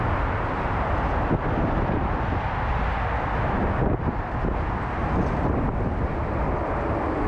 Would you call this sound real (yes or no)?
yes